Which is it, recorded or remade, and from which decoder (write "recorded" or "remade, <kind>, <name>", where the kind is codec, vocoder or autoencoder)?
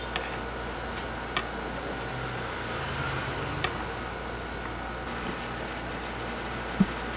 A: recorded